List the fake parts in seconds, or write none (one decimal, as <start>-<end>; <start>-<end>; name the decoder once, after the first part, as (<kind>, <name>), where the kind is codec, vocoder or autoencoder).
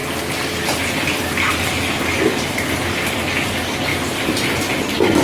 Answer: 3.9-4.7 (vocoder, BigVGAN v2)